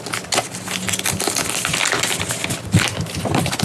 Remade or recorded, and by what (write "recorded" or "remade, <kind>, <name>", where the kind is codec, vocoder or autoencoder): recorded